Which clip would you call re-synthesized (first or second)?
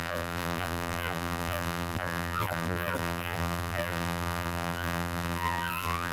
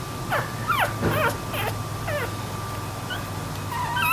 first